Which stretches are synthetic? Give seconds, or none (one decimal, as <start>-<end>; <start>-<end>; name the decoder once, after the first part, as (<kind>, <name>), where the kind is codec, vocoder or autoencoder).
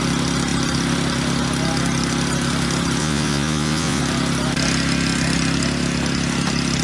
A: 3.0-4.0 (vocoder, Vocos)